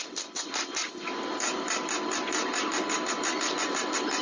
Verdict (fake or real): real